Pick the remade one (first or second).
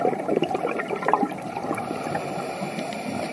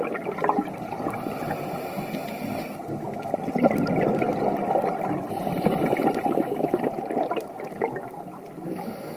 first